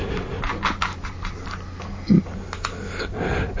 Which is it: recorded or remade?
recorded